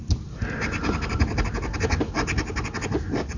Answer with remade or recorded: recorded